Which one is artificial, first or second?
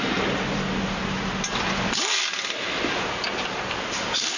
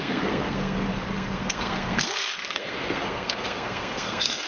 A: second